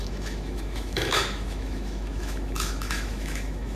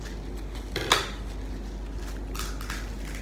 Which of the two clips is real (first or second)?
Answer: second